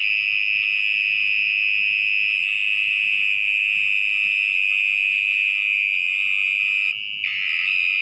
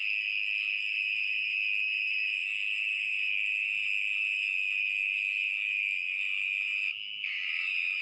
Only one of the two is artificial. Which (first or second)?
second